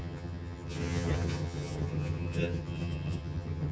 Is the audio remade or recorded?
remade